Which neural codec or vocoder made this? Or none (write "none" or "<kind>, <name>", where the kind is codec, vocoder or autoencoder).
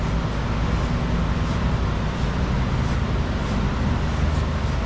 none